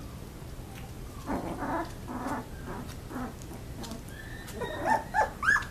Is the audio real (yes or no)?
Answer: yes